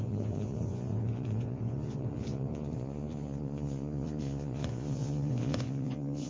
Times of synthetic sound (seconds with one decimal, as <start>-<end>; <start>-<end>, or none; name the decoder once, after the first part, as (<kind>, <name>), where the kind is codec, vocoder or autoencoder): 0.0-6.3 (vocoder, Vocos)